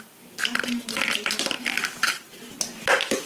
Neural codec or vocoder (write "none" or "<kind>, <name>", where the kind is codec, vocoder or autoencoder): none